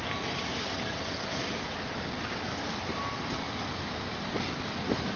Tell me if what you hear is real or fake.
real